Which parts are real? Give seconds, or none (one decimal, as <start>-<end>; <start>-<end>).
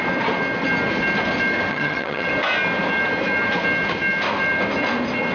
0.0-1.7; 2.3-5.3